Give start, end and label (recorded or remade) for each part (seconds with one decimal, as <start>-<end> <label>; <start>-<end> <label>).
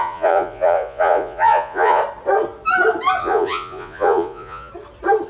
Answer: 0.0-2.0 remade; 2.0-3.2 recorded; 3.2-4.7 remade; 4.7-5.3 recorded